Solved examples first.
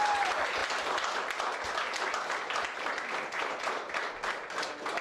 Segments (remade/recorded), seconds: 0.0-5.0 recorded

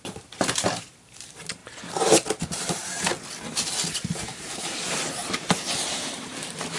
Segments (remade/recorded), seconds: 0.0-1.6 remade; 1.6-2.4 recorded; 2.4-3.1 remade; 3.1-4.2 recorded; 4.2-6.8 remade